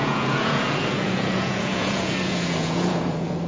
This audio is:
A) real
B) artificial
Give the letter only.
B